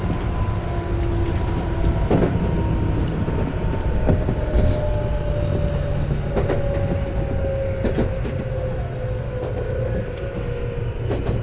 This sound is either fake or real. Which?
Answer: real